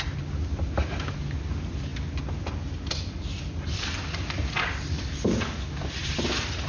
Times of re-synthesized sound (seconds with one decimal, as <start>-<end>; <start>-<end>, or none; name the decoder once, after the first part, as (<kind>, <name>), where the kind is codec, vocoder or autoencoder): none